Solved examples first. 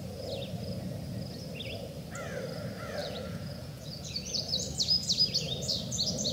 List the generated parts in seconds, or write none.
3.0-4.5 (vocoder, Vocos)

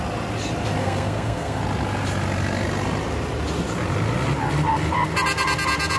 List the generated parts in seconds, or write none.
0.8-1.6 (codec, SNAC)

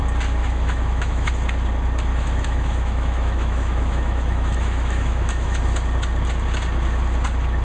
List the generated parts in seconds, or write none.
0.4-1.3 (autoencoder, DAC-VAE); 2.1-5.6

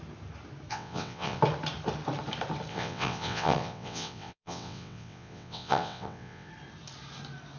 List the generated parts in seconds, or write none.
0.7-1.4 (vocoder, WaveNeXt); 2.7-6.5

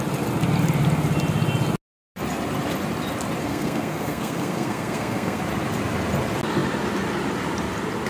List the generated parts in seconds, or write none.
3.4-5.4 (codec, SNAC)

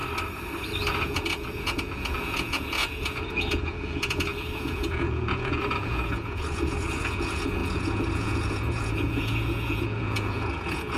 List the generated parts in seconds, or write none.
0.9-11.0 (vocoder, Vocos)

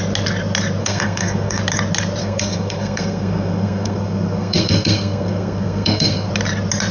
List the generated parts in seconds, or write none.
0.8-1.6 (codec, SNAC); 2.2-6.3